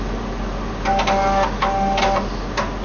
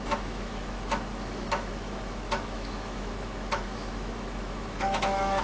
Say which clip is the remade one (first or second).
second